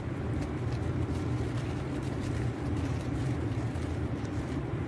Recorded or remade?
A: remade